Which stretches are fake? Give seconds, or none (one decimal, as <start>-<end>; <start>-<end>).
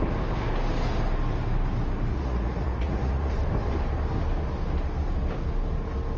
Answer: 2.1-3.3